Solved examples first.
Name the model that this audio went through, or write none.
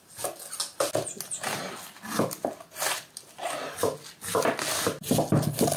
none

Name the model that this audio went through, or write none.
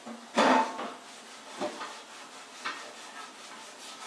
none